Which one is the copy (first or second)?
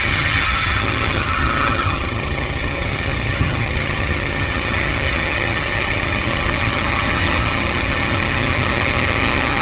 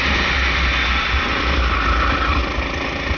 first